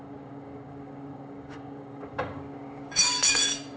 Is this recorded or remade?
remade